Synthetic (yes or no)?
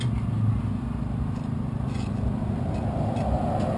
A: no